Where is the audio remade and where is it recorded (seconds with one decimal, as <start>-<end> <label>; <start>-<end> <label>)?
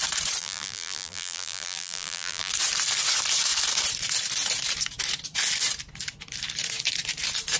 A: 0.0-0.4 recorded; 0.4-2.5 remade; 2.5-7.6 recorded